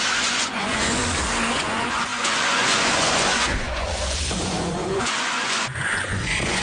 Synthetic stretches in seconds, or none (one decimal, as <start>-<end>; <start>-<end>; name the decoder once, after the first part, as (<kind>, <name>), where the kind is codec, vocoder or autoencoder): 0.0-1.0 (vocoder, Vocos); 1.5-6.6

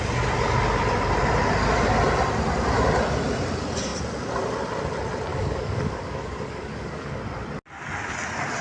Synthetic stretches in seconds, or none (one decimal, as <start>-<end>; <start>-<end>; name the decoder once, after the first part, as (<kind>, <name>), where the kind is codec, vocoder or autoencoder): 5.3-7.2 (codec, DAC)

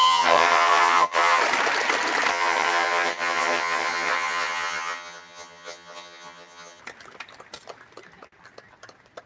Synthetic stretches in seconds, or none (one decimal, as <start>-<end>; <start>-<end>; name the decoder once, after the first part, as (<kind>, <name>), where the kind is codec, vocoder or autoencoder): 0.0-1.4 (vocoder, HiFi-GAN); 2.3-6.8

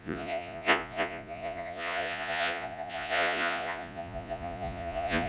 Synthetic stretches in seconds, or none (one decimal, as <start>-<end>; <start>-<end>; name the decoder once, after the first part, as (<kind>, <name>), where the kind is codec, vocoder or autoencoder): 0.0-5.3 (vocoder, Vocos)

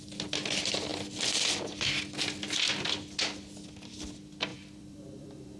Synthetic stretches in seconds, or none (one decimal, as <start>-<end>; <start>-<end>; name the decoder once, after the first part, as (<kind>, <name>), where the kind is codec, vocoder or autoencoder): 4.5-5.6 (vocoder, BigVGAN v2)